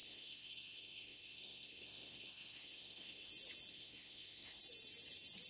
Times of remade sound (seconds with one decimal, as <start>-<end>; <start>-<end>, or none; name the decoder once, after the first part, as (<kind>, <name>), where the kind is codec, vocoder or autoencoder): 0.0-3.3 (codec, SNAC); 3.7-4.6